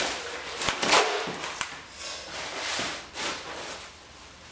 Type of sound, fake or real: real